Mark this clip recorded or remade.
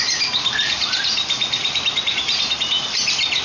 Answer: recorded